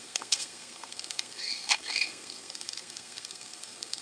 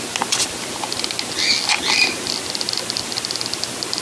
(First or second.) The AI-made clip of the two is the first